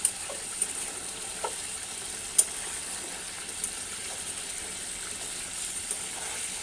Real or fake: real